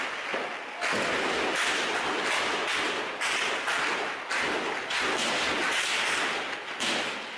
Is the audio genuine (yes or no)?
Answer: yes